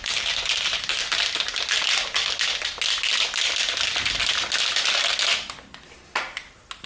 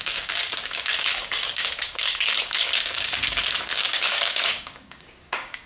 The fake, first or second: second